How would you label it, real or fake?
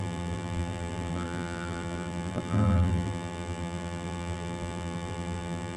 fake